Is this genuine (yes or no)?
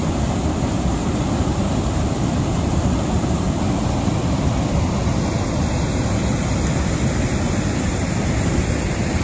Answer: yes